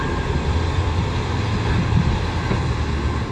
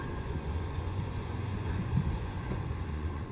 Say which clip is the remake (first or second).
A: second